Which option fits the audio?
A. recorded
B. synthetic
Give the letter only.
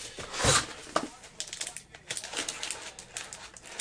A